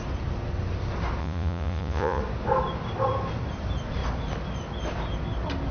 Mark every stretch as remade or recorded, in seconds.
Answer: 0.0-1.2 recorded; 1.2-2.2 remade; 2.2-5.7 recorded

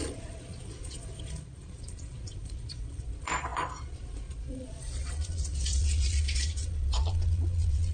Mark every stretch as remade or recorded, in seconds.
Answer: 0.0-7.9 remade